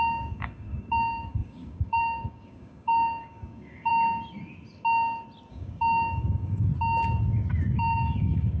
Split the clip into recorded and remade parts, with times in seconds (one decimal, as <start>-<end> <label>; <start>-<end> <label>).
0.0-3.9 remade; 3.9-5.5 recorded; 5.5-6.7 remade; 6.7-7.8 recorded; 7.8-8.6 remade